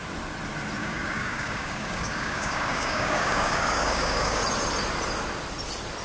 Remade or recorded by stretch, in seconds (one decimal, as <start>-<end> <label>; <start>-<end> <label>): 0.0-0.8 recorded; 0.8-4.4 remade; 4.4-6.0 recorded